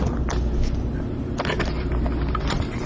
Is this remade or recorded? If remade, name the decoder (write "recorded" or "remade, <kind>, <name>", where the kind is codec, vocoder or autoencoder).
recorded